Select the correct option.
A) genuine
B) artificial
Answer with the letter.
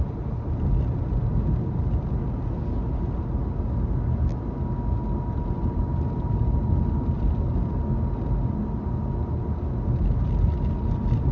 A